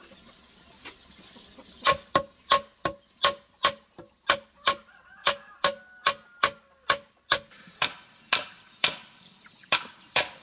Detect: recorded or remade recorded